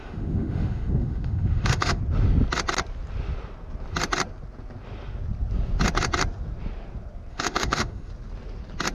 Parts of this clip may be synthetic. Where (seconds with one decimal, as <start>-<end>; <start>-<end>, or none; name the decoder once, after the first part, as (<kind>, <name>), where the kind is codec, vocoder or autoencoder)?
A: 0.0-2.0 (autoencoder, DAC-VAE); 7.3-8.1